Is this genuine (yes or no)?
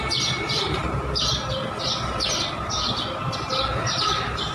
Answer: no